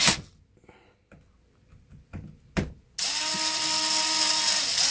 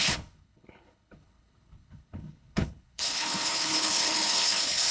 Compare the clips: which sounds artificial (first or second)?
second